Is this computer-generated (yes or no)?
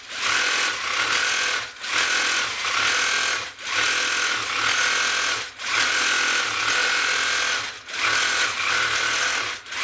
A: no